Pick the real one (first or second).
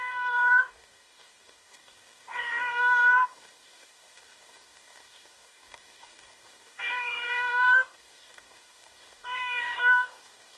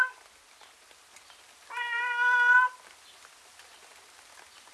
second